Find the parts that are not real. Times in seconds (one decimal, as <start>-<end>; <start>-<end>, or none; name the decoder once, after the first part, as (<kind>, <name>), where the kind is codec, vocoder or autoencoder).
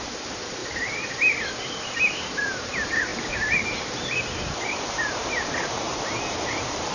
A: 0.0-0.6 (vocoder, BigVGAN v2); 1.5-6.9